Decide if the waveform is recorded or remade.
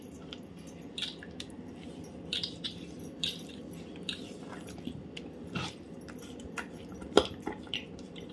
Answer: remade